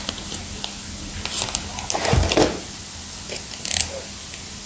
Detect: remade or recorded recorded